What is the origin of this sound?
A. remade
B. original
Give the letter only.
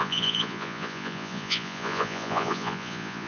A